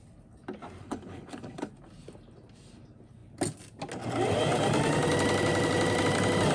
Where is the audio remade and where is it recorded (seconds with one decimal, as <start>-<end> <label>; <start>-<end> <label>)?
0.0-0.8 recorded; 0.8-1.7 remade; 1.7-6.5 recorded